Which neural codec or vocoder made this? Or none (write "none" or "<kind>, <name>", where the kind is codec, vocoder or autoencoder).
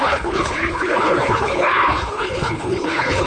codec, HILCodec